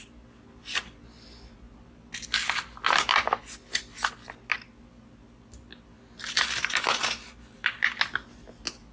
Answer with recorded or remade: recorded